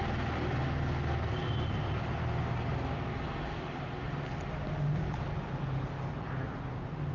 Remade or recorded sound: recorded